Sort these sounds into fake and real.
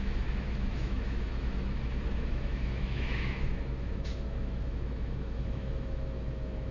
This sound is fake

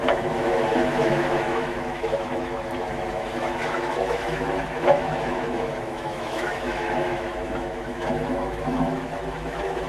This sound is fake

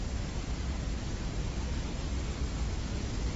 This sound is real